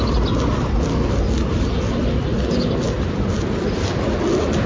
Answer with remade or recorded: recorded